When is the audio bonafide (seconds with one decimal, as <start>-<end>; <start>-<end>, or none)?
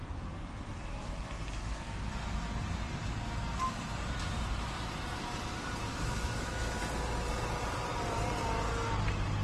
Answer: 0.0-5.9; 6.8-9.4